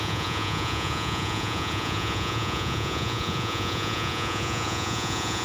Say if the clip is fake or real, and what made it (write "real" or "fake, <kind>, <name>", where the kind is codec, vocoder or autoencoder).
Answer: fake, vocoder, Vocos